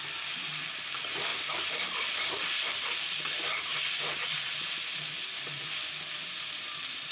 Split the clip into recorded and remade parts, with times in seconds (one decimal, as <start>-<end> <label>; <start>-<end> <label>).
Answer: 0.0-7.1 recorded